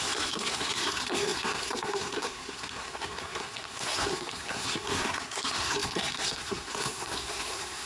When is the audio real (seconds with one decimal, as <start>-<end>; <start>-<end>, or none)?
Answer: none